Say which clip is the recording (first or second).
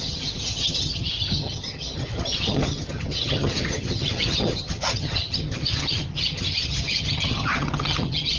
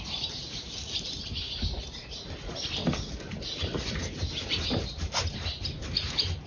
second